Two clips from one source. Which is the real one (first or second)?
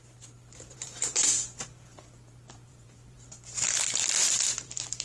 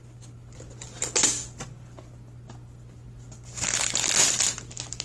second